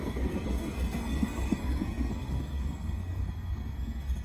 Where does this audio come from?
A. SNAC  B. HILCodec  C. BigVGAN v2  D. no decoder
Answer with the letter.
A